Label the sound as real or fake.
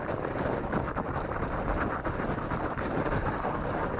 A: real